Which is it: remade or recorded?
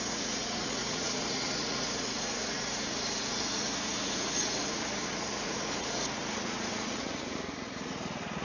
remade